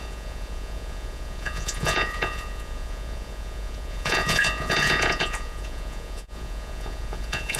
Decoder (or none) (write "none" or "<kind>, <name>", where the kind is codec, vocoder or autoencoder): vocoder, Vocos